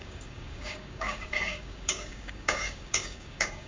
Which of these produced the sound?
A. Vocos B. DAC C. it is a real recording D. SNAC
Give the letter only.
B